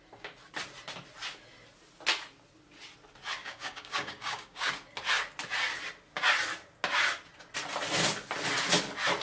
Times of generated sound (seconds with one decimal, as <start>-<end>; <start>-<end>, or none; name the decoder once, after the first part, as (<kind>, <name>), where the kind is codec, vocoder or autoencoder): 3.4-4.7 (codec, DAC)